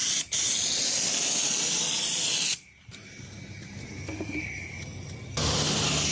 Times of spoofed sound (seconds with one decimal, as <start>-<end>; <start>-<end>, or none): none